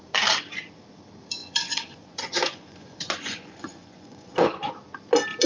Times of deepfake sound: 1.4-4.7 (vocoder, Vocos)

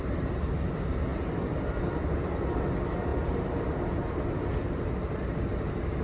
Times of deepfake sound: none

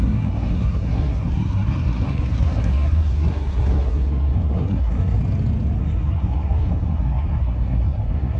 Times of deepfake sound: 0.0-5.2 (codec, SNAC); 5.8-8.4

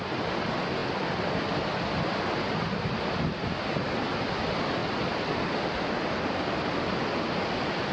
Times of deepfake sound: none